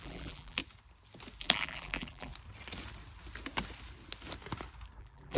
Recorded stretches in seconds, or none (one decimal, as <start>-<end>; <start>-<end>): 0.6-1.4; 2.3-5.0